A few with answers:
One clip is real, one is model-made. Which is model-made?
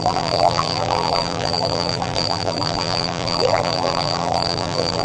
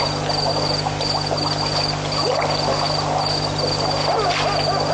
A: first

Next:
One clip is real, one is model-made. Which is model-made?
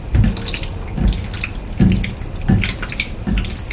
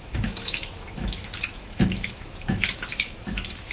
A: second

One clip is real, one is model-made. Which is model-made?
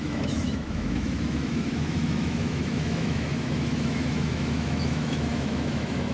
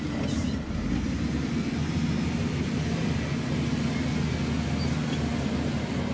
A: first